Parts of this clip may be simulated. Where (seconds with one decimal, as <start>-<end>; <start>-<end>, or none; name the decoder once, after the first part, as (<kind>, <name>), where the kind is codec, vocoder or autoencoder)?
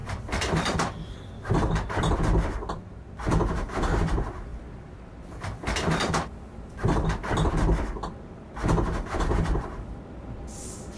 0.0-1.3 (vocoder, BigVGAN v2); 4.5-5.3